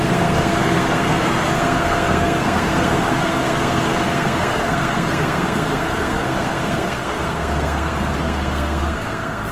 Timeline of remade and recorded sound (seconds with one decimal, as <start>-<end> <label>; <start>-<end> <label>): 0.0-9.5 remade